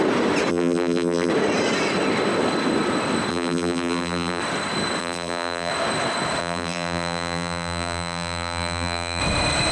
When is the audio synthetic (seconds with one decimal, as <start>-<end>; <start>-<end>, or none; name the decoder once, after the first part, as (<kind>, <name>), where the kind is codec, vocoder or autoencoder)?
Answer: 0.5-1.3 (vocoder, BigVGAN v2); 3.3-4.4; 5.0-5.7; 6.4-9.2